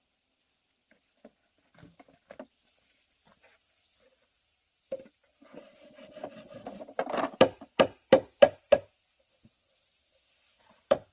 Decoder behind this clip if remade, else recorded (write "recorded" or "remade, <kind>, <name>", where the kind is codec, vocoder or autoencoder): remade, vocoder, BigVGAN v2